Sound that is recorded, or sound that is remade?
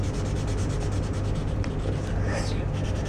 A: recorded